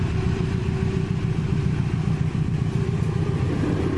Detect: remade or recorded remade